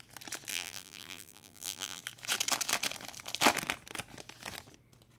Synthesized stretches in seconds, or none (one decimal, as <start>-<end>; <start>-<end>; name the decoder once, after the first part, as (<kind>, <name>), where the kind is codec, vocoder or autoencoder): 0.5-2.0 (vocoder, BigVGAN v2)